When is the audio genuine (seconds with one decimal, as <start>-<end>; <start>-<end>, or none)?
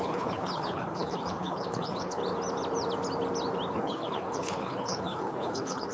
2.2-3.7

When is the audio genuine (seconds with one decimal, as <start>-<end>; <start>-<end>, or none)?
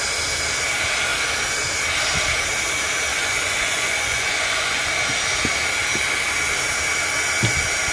0.0-3.1; 4.9-7.9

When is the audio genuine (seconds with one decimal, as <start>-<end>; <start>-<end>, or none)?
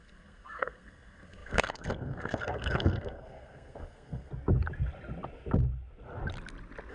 4.3-6.9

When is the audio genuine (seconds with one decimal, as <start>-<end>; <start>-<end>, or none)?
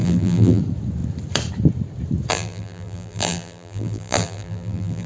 0.6-2.3